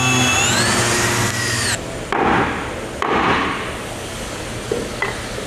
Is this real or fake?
real